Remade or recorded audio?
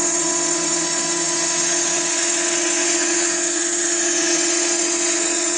remade